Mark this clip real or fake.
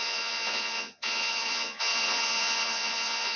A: fake